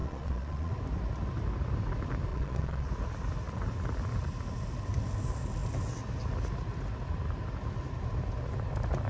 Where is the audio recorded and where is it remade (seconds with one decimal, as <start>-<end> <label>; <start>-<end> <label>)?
0.0-0.7 remade; 0.7-2.3 recorded; 2.3-2.9 remade; 2.9-9.1 recorded